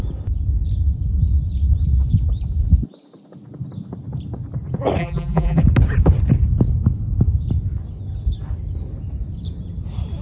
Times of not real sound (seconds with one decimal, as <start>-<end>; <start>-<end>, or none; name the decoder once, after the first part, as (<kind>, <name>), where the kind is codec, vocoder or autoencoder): 5.0-5.6 (vocoder, BigVGAN v2)